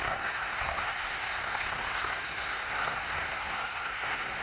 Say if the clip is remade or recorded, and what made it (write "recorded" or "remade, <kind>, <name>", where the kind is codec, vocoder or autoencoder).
remade, codec, SNAC